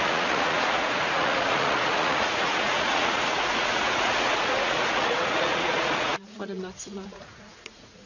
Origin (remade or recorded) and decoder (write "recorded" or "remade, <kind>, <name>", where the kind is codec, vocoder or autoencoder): remade, vocoder, Vocos